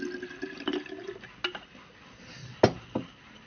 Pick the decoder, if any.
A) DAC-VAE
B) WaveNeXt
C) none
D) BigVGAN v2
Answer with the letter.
C